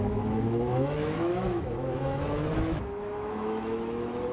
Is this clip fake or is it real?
fake